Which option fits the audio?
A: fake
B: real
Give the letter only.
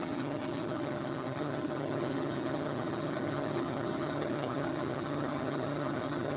A